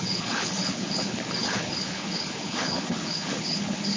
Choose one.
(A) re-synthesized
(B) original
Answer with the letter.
A